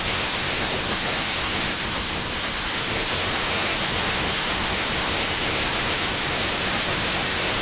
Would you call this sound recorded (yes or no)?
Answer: no